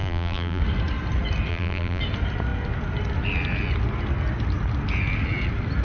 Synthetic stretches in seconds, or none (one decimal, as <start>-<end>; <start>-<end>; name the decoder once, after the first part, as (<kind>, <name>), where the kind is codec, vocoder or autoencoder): 0.0-0.6 (vocoder, BigVGAN v2); 1.5-2.0